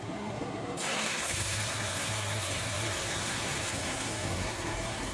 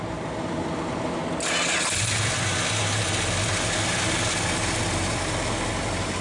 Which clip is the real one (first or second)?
second